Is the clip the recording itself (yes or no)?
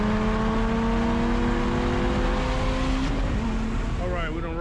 yes